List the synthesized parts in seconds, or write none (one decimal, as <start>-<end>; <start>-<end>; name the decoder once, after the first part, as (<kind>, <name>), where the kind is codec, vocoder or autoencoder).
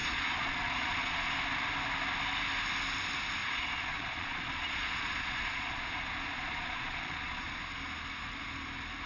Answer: 0.0-1.4 (vocoder, Vocos); 3.4-7.6